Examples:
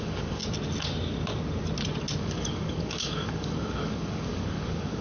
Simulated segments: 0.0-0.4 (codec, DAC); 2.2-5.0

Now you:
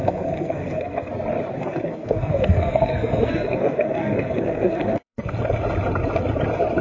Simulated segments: 0.0-1.1 (codec, SNAC); 1.6-5.3